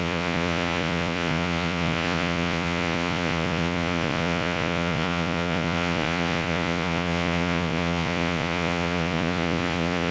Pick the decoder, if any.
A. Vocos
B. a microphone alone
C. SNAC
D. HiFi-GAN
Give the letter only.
A